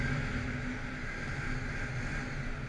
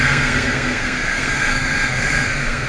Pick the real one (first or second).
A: first